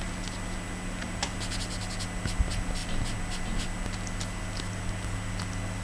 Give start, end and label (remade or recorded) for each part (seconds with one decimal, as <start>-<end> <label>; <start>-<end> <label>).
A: 0.0-5.8 recorded